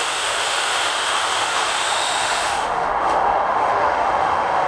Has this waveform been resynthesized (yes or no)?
yes